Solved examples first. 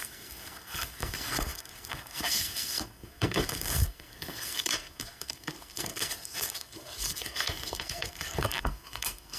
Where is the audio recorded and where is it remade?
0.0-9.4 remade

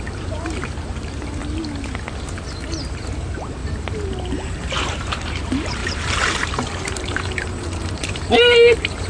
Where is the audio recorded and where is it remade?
0.0-1.4 remade; 1.4-2.9 recorded; 2.9-9.1 remade

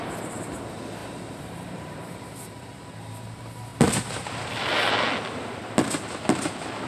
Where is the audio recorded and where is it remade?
0.0-1.0 recorded; 1.0-2.8 remade; 2.8-6.9 recorded

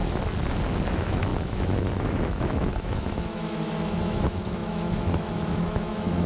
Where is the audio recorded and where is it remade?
0.0-0.9 recorded; 0.9-6.3 remade

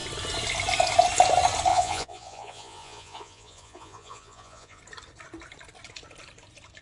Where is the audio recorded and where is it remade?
0.0-1.7 recorded; 1.7-4.8 remade; 4.8-6.8 recorded

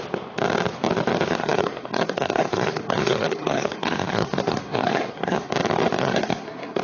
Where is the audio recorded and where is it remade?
0.0-1.4 recorded; 1.4-5.5 remade; 5.5-6.0 recorded; 6.0-6.8 remade

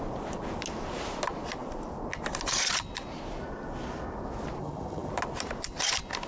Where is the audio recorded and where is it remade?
0.0-4.6 recorded; 4.6-5.1 remade; 5.1-6.3 recorded

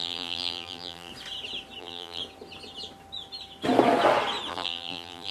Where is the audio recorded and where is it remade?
0.0-1.1 remade; 1.1-1.8 recorded; 1.8-2.2 remade; 2.2-4.5 recorded; 4.5-5.3 remade